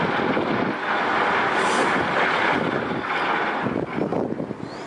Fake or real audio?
real